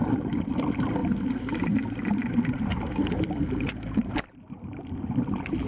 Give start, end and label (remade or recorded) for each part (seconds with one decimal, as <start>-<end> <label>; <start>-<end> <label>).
0.0-5.7 remade